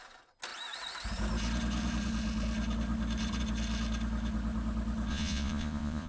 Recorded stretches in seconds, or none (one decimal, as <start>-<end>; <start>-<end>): 0.0-5.1